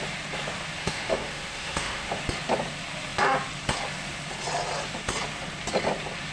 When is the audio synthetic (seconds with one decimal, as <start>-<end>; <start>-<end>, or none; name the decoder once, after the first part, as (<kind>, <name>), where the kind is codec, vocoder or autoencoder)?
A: 0.8-2.2 (autoencoder, DAC-VAE)